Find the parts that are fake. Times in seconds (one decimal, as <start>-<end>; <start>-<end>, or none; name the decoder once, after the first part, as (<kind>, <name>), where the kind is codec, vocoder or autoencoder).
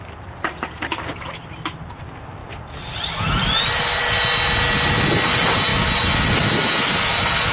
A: none